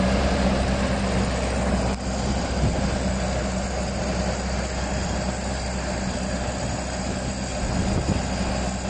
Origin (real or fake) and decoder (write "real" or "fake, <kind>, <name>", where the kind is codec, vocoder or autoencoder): real